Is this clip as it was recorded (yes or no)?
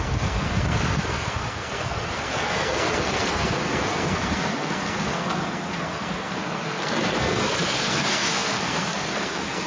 no